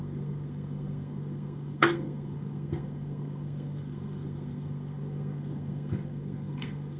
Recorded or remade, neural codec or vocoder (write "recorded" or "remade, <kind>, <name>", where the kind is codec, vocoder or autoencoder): remade, codec, SNAC